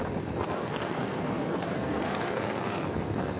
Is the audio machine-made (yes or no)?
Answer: yes